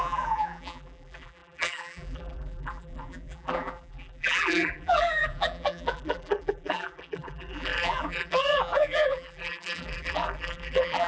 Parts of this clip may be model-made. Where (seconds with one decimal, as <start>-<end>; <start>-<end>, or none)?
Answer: 0.0-11.1